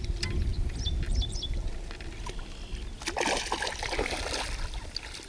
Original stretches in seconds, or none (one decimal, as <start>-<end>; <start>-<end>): 0.0-5.3